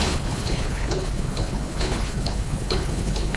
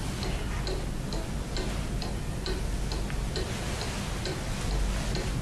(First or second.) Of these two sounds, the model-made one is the first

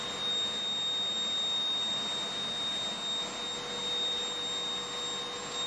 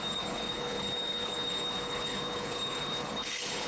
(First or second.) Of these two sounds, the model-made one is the second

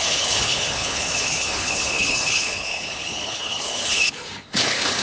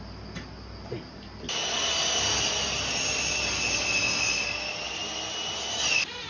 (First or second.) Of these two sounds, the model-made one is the first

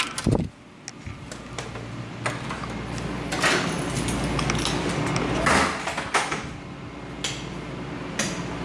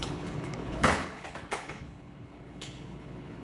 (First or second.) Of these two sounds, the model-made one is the second